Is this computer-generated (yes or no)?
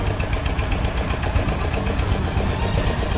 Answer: no